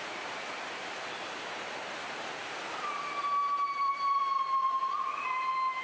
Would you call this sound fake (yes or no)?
yes